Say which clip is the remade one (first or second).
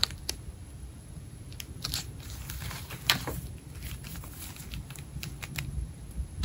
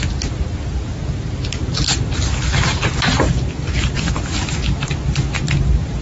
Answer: first